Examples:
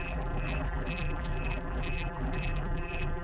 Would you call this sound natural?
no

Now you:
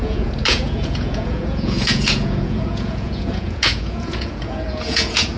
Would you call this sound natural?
no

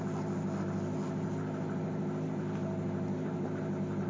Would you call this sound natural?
yes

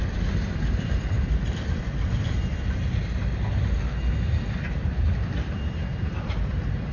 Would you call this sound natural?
no